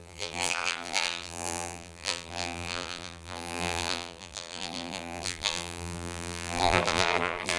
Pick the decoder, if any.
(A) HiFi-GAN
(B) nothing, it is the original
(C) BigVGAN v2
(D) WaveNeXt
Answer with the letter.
C